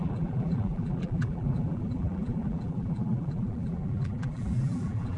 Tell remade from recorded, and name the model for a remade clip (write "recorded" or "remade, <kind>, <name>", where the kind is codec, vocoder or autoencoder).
remade, vocoder, BigVGAN v2